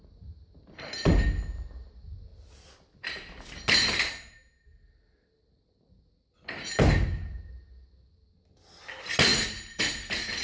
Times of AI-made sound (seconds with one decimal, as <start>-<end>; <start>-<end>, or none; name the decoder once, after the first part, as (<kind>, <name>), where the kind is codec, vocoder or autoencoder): none

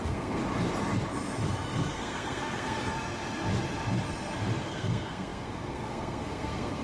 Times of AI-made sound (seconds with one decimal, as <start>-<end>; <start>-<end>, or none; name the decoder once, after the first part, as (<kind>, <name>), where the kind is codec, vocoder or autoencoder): 0.0-0.4 (codec, SNAC); 1.9-2.9; 4.6-6.8

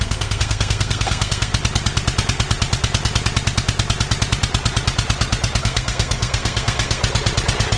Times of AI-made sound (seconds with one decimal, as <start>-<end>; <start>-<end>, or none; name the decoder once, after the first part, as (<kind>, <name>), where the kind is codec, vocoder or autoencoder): 0.0-1.5 (codec, SNAC); 5.6-7.0

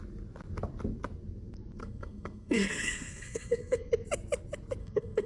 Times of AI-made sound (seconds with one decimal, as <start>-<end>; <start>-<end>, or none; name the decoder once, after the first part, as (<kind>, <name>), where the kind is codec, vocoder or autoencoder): 1.8-3.9 (codec, SNAC); 4.8-5.3

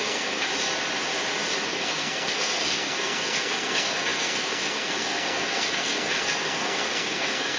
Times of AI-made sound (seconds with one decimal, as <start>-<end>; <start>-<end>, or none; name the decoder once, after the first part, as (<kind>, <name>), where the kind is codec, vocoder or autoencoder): 0.0-0.5 (codec, SNAC); 1.7-7.6